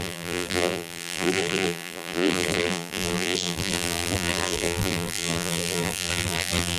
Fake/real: fake